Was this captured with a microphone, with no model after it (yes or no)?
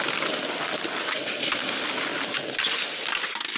yes